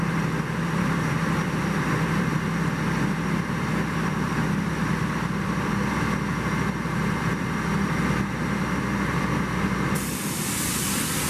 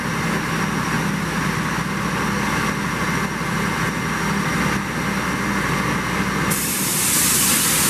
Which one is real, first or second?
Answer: second